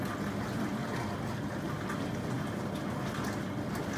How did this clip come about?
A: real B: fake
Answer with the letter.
A